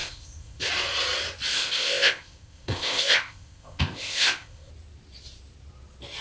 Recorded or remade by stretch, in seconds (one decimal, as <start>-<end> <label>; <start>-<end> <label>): 0.0-0.7 remade; 0.7-1.5 recorded; 1.5-4.7 remade; 4.7-6.2 recorded